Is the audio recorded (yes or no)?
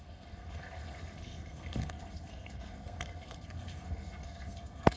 no